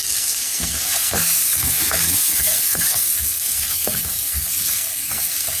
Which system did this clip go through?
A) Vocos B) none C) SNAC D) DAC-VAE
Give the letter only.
C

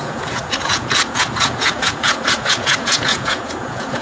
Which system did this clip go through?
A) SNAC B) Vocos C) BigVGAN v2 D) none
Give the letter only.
B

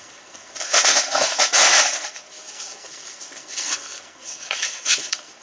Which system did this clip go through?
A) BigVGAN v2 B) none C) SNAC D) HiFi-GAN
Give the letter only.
C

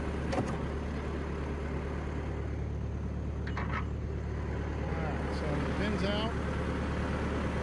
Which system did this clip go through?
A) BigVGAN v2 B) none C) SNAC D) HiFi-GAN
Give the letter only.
B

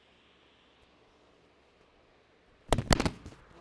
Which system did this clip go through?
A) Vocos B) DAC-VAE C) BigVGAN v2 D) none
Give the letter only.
D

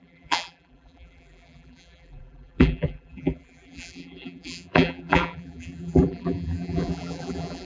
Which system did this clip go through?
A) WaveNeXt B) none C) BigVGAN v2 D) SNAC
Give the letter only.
C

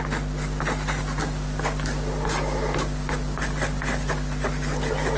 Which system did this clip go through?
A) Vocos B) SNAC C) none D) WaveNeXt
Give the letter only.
C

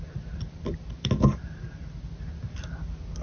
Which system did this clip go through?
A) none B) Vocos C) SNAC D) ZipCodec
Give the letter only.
A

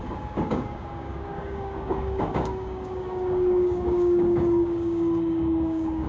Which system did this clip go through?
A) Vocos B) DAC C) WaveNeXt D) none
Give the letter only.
B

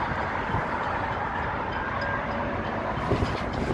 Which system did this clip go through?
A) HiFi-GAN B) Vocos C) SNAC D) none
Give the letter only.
D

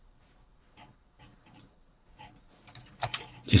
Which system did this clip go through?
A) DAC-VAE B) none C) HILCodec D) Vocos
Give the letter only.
D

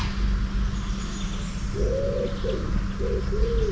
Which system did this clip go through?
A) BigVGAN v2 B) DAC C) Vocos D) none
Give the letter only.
D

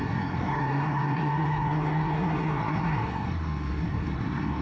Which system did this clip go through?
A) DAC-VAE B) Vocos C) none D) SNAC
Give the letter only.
D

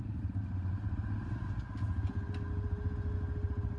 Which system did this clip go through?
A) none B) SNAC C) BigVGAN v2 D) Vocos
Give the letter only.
A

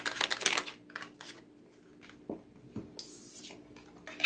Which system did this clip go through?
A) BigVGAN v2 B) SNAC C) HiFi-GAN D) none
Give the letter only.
D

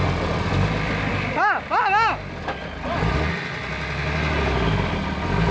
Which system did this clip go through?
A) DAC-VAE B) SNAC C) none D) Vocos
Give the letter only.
C